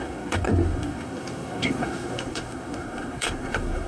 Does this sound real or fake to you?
fake